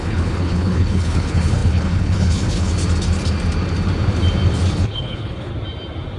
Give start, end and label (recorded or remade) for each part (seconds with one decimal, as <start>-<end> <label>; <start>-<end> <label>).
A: 0.0-2.7 remade; 2.7-4.7 recorded; 4.7-5.5 remade; 5.5-6.2 recorded